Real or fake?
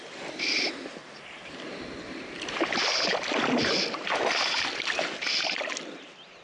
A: real